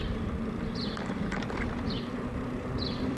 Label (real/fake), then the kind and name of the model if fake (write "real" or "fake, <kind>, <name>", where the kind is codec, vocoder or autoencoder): fake, vocoder, BigVGAN v2